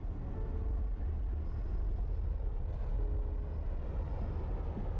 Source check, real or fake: real